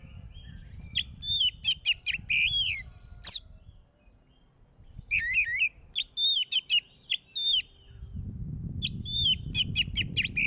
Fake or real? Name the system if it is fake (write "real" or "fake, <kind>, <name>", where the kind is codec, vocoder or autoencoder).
real